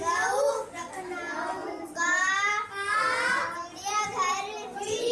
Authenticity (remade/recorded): recorded